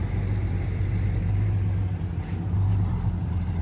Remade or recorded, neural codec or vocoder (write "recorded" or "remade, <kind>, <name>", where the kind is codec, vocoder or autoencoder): recorded